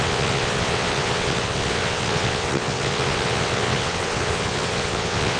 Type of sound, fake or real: fake